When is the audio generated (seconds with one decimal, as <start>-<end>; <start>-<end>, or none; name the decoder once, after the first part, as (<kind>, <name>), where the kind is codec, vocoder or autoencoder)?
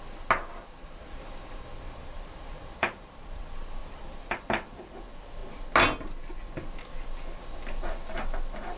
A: 0.5-3.4 (vocoder, BigVGAN v2); 3.8-4.8